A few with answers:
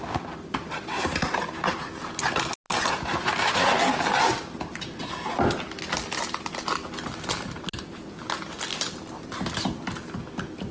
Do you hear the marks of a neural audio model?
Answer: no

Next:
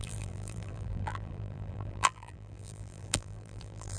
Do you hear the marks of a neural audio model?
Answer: yes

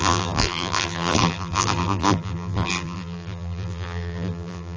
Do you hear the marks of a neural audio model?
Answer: yes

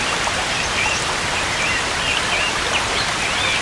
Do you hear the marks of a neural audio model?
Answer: no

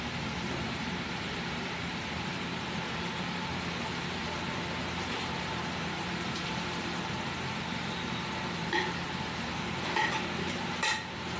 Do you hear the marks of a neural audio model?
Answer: yes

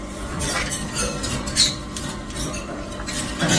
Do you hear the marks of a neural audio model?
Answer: yes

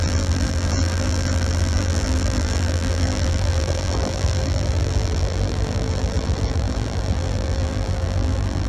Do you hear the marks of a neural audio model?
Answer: yes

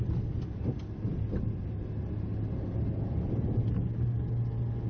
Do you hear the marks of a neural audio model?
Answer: no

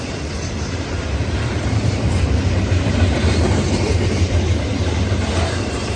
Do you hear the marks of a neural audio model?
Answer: yes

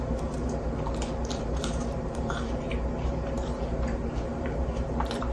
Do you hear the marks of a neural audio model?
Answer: yes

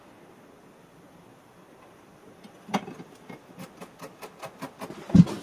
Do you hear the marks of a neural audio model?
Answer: no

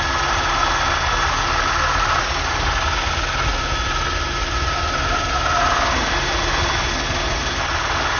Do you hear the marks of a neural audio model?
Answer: no